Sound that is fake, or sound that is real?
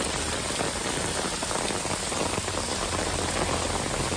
real